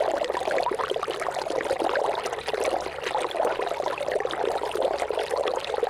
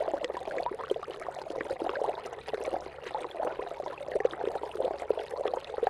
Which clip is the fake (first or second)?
second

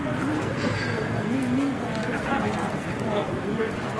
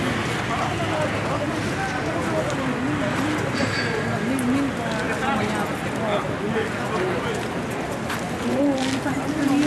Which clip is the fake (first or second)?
first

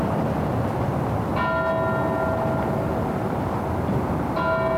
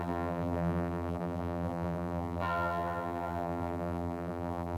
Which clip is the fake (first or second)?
second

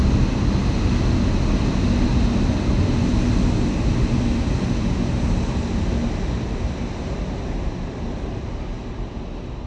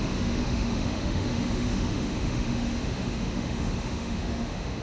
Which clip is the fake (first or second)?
second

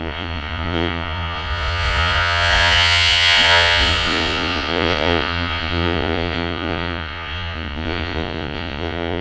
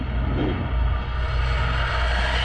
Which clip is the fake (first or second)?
first